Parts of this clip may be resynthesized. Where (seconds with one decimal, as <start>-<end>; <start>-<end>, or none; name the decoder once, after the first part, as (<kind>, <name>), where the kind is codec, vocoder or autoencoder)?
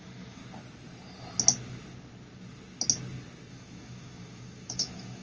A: 0.0-0.4 (autoencoder, DAC-VAE); 3.5-5.2